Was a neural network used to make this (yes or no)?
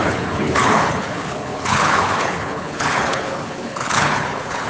yes